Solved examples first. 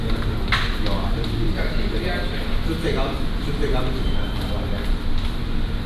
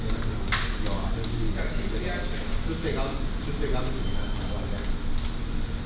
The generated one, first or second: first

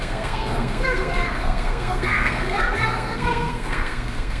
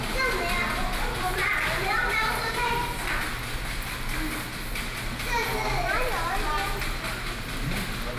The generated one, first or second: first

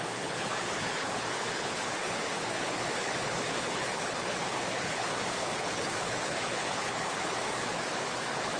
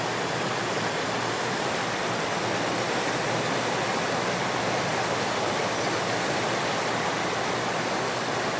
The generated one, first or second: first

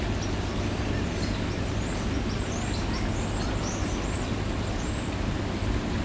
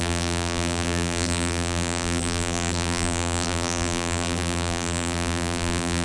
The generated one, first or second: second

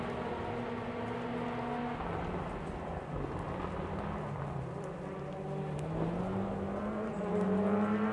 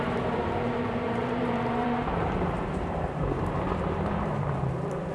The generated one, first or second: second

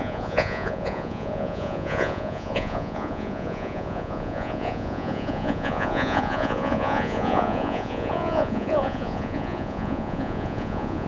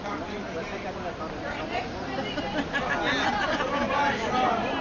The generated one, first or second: first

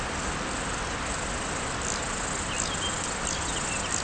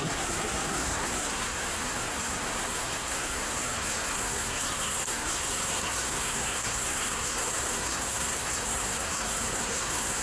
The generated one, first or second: second